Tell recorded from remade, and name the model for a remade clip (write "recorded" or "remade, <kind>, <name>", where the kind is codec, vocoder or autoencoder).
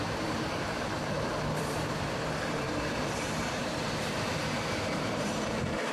remade, vocoder, BigVGAN v2